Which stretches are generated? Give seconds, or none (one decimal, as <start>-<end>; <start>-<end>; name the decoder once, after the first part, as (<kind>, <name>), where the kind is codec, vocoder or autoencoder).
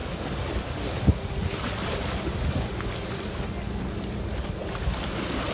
none